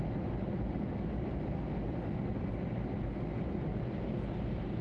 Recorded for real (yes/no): yes